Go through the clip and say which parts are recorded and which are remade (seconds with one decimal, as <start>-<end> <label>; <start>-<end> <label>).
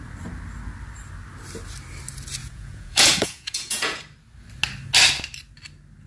0.0-2.4 recorded; 2.4-4.0 remade; 4.0-6.1 recorded